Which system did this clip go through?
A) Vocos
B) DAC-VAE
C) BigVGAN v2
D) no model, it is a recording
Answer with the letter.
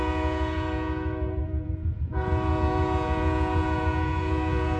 A